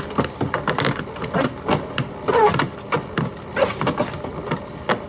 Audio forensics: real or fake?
real